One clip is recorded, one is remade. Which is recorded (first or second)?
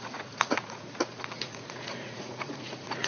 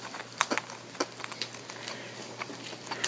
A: second